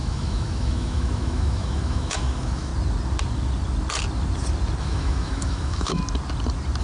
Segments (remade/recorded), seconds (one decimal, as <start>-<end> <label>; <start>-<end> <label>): 0.0-2.7 remade; 2.7-4.8 recorded; 4.8-6.0 remade; 6.0-6.8 recorded